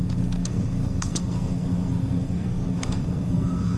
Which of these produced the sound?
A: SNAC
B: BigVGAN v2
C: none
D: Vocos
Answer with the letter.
A